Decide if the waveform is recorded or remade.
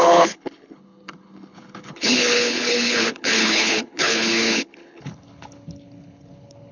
remade